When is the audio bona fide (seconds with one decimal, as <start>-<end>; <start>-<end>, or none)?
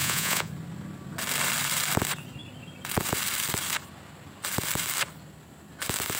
0.5-6.2